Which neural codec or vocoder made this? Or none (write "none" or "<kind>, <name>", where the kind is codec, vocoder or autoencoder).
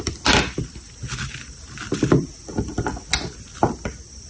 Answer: none